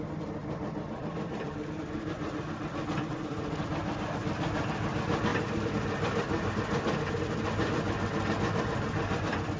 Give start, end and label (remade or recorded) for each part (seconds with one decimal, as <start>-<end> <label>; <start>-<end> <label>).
0.0-9.6 remade